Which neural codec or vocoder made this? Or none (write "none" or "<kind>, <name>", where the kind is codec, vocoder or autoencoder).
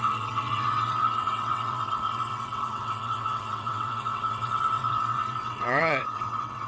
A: vocoder, WaveNeXt